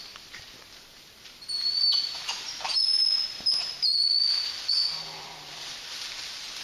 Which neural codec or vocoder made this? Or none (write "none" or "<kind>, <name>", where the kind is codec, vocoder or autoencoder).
none